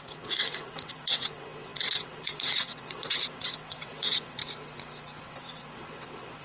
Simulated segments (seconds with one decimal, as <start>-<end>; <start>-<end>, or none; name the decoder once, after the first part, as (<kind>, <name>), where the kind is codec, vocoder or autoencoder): 0.0-4.4 (vocoder, WaveNeXt); 5.2-6.4